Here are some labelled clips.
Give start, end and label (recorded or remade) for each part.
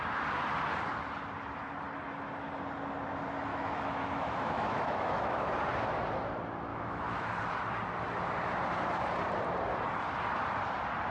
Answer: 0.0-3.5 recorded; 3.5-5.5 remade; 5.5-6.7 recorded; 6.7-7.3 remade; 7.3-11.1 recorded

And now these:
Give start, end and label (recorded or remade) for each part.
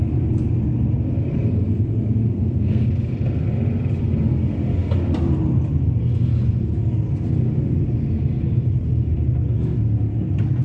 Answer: 0.0-2.3 recorded; 2.3-2.9 remade; 2.9-10.6 recorded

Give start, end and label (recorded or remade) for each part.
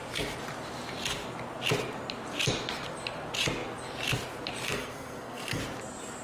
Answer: 0.0-4.7 recorded; 4.7-5.6 remade; 5.6-6.2 recorded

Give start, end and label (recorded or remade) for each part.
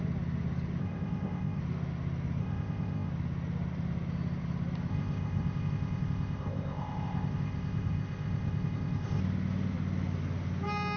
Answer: 0.0-0.8 recorded; 0.8-1.6 remade; 1.6-2.4 recorded; 2.4-3.1 remade; 3.1-4.9 recorded; 4.9-9.2 remade; 9.2-11.0 recorded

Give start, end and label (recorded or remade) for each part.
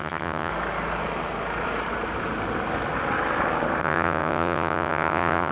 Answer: 0.0-0.5 remade; 0.5-3.8 recorded; 3.8-5.5 remade